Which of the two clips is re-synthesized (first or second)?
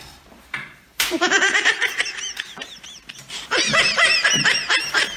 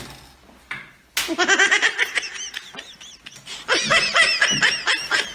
first